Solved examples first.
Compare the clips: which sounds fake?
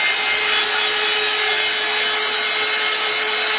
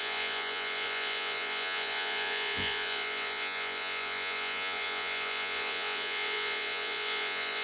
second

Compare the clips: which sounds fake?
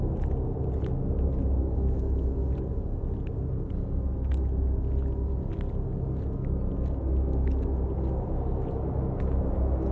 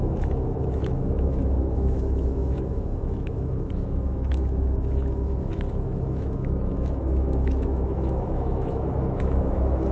second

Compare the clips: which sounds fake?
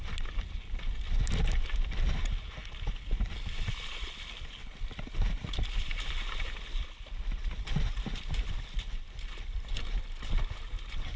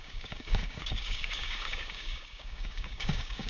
second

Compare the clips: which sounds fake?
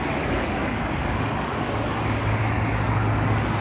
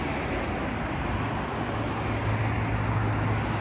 first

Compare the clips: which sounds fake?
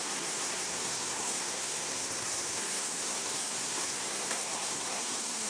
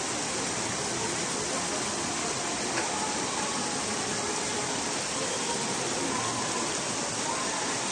first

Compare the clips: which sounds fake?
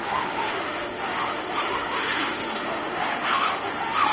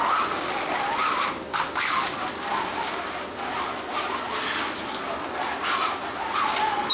first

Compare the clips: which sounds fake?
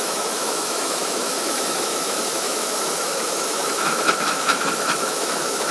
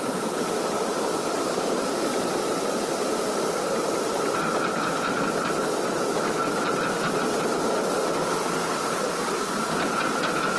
first